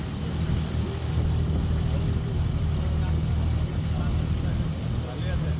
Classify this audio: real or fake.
real